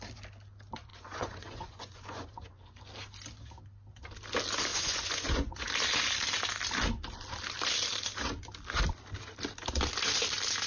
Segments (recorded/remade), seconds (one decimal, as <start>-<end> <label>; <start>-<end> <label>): 0.0-0.9 recorded; 0.9-2.8 remade; 2.8-4.7 recorded; 4.7-5.7 remade; 5.7-10.7 recorded